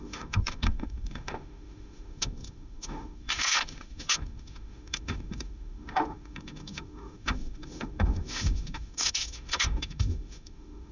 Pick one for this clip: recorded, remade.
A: remade